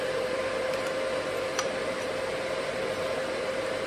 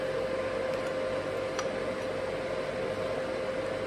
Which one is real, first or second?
second